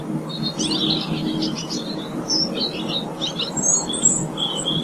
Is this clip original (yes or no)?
yes